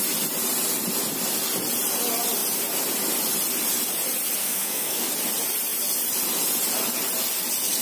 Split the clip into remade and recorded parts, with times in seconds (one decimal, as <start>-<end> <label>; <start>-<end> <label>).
0.0-4.4 recorded; 4.4-5.1 remade; 5.1-7.8 recorded